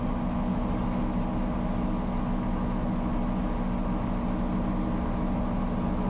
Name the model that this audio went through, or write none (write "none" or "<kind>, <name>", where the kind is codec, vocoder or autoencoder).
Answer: none